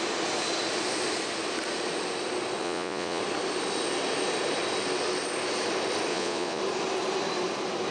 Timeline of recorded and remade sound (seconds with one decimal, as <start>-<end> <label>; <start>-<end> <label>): 0.0-2.6 recorded; 2.6-3.2 remade; 3.2-6.1 recorded; 6.1-6.6 remade; 6.6-7.9 recorded